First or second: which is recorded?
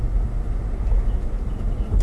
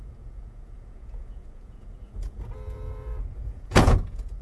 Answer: first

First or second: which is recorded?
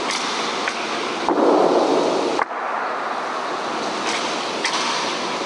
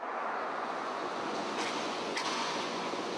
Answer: first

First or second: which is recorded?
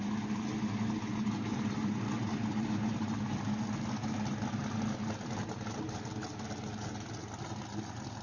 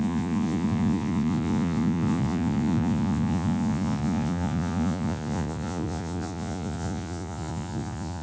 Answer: first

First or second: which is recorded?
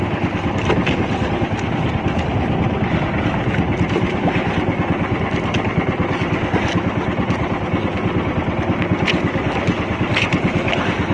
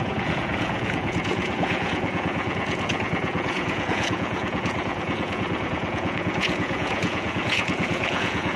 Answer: first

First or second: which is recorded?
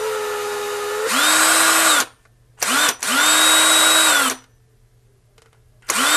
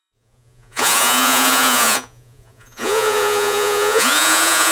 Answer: first